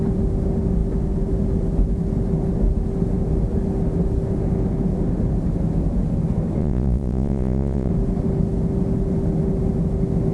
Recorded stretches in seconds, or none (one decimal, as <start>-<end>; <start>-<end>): 0.0-6.6; 7.9-10.3